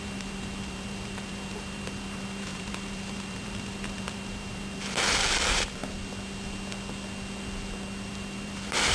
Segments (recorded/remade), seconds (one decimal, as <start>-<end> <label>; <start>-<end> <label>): 0.0-5.8 remade; 5.8-8.1 recorded; 8.1-8.9 remade